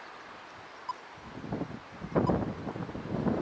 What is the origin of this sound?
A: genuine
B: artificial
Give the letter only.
A